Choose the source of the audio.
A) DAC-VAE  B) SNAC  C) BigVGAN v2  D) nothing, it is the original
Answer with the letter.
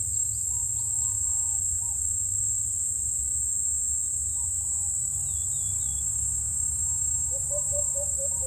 D